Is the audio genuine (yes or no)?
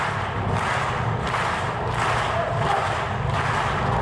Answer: yes